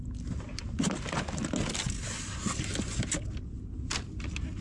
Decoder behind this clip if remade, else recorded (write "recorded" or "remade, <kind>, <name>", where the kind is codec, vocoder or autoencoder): recorded